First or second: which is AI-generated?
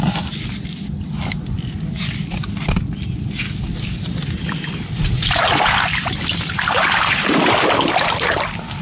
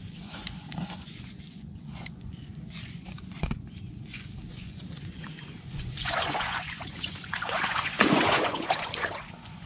second